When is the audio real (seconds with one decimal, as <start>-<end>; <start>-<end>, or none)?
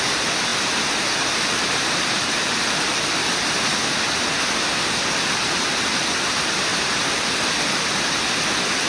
0.0-0.5; 3.3-6.7; 7.5-8.9